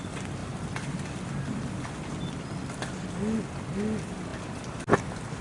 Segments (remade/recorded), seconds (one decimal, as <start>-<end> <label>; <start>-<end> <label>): 0.0-5.4 recorded